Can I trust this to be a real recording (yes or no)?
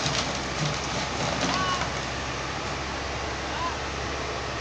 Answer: yes